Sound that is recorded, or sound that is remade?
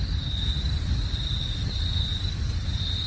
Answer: recorded